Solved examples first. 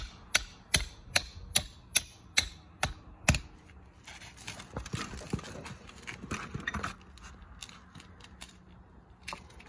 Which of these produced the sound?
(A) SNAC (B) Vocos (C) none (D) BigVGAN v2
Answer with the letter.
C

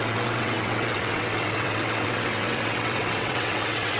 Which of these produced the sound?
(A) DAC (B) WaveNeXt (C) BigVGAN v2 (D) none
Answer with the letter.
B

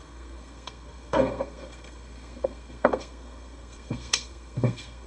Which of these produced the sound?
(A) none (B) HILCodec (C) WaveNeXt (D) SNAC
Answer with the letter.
D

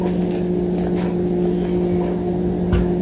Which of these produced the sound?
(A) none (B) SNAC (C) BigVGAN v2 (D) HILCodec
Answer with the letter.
A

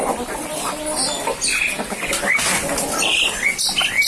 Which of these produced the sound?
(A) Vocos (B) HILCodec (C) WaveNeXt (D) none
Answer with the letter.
D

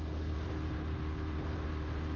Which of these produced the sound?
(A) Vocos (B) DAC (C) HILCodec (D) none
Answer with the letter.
D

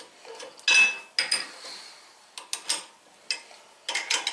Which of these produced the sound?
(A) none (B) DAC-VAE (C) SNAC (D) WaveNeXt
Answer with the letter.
A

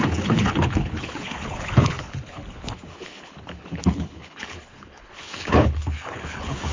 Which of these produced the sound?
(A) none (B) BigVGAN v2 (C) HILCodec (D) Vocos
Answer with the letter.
C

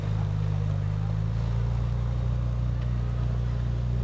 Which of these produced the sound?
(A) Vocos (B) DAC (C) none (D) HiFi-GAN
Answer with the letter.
C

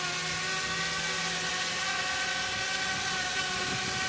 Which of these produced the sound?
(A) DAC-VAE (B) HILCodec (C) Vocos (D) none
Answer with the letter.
D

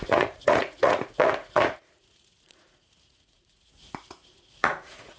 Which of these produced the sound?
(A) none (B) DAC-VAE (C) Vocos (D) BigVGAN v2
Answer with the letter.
C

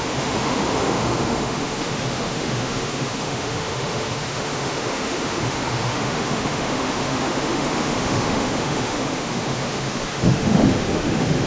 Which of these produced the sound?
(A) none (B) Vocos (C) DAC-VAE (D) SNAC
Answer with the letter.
C